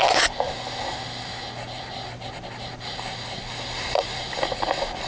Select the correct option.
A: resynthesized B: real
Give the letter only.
B